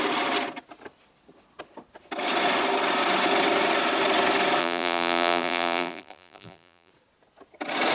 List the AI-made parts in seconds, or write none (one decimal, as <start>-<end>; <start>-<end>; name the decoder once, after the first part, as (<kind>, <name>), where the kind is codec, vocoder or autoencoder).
4.6-6.9 (vocoder, BigVGAN v2)